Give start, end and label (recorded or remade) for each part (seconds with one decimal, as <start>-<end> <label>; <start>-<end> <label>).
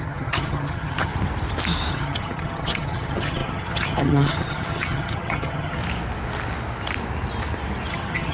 0.0-1.1 remade; 1.1-1.9 recorded; 1.9-5.8 remade; 5.8-7.9 recorded; 7.9-8.3 remade